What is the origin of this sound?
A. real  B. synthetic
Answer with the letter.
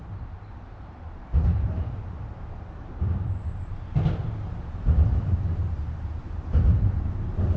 B